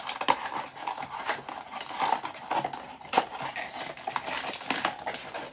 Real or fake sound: real